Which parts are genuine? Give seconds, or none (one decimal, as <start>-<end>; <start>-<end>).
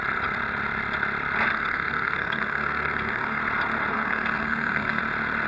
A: 0.0-1.5; 3.4-3.9; 5.0-5.5